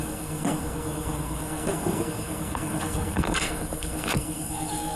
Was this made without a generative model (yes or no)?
no